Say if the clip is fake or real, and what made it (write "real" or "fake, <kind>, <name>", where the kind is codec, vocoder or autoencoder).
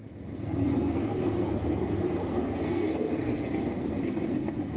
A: fake, codec, SNAC